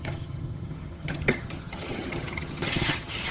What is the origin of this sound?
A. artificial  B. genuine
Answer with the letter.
A